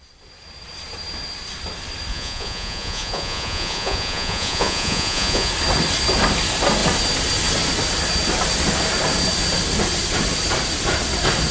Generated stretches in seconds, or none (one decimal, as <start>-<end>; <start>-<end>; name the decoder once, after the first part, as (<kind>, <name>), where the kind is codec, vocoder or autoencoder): 2.1-5.5 (vocoder, Vocos)